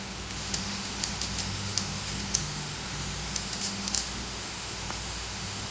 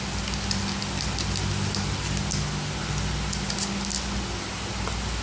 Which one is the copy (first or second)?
first